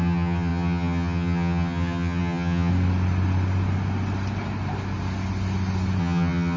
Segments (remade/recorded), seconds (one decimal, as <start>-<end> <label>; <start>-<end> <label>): 0.0-2.7 remade; 2.7-6.0 recorded; 6.0-6.6 remade